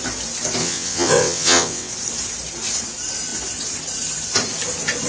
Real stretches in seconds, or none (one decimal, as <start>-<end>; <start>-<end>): 0.0-0.6; 1.9-5.1